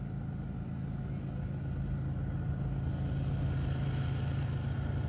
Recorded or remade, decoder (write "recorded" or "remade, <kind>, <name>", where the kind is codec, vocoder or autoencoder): recorded